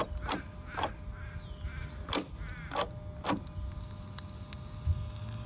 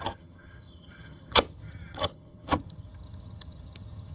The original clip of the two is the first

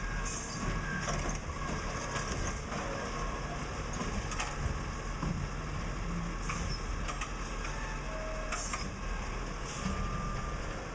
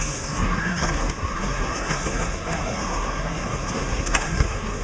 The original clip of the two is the first